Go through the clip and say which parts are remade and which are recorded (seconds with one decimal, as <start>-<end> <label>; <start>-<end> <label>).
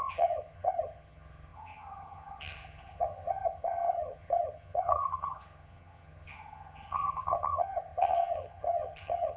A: 0.0-9.4 remade